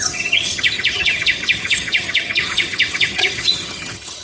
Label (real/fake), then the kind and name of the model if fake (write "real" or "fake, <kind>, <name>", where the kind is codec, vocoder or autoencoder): fake, vocoder, HiFi-GAN